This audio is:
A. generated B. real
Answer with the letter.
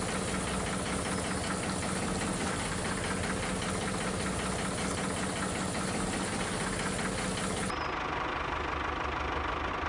B